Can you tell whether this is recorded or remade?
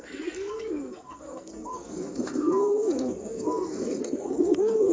remade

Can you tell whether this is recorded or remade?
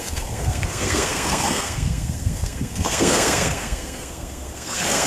remade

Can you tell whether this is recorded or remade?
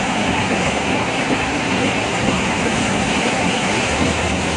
remade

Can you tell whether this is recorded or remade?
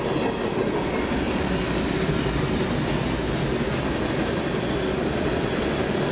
recorded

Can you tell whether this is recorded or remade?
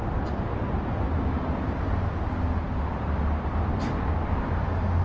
recorded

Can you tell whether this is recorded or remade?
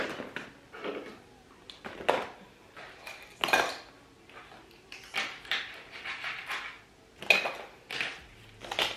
recorded